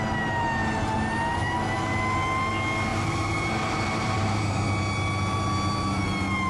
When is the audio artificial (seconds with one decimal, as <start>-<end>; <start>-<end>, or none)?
2.9-4.4